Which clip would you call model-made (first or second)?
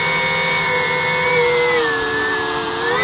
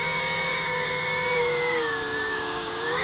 second